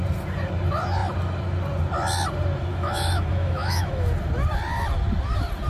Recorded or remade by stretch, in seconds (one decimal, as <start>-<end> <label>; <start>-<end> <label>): 0.0-2.7 recorded; 2.7-4.1 remade; 4.1-5.7 recorded